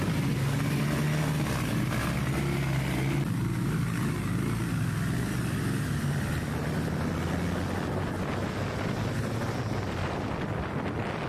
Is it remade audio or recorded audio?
recorded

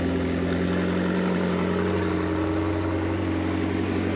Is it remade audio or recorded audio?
recorded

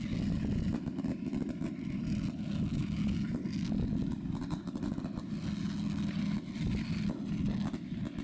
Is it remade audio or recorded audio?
recorded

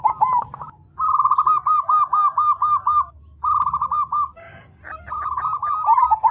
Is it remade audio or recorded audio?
recorded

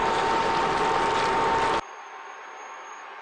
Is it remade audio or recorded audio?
recorded